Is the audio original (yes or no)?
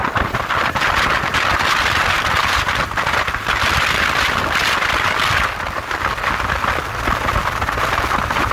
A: yes